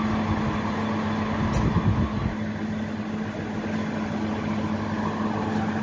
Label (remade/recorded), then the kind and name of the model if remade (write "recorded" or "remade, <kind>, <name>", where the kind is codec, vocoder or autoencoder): recorded